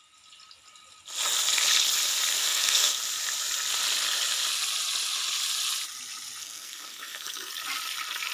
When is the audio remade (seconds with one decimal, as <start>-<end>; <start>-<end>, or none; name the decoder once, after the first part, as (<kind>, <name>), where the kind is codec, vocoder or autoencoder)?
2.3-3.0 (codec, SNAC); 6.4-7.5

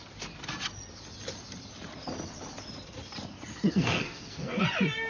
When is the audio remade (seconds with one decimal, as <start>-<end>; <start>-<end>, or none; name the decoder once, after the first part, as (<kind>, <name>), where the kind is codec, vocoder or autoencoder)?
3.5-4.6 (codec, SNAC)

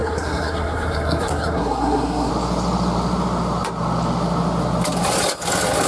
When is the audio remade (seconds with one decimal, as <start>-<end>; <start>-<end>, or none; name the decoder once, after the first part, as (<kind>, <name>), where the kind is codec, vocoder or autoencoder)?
0.0-2.3 (codec, SNAC)

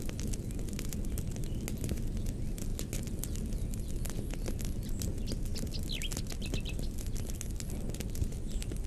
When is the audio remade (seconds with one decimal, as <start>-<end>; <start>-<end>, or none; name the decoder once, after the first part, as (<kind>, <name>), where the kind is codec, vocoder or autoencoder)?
none